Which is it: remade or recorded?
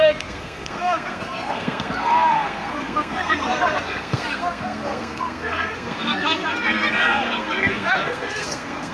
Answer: remade